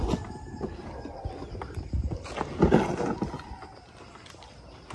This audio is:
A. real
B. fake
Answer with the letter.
A